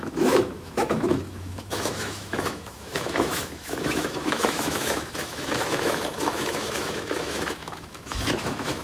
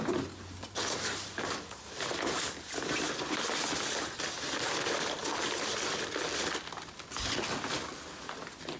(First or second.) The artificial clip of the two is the first